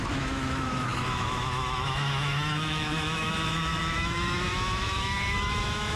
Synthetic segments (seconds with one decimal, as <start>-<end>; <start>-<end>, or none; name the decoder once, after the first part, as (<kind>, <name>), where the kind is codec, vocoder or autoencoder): 0.0-6.0 (autoencoder, DAC-VAE)